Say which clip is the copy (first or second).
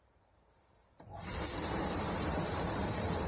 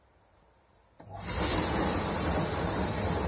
first